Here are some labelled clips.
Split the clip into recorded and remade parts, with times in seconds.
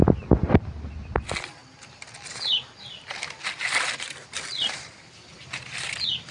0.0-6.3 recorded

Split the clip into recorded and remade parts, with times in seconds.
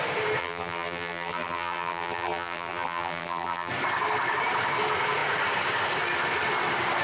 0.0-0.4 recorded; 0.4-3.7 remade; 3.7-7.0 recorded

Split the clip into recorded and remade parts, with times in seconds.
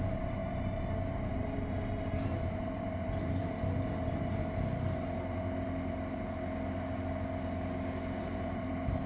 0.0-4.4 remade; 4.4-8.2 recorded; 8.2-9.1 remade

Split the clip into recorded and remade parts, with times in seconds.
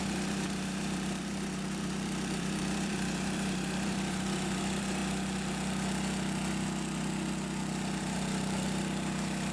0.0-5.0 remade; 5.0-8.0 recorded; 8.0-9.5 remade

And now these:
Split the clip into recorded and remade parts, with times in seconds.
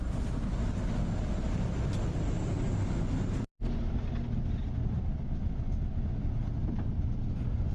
0.0-6.6 recorded; 6.6-7.7 remade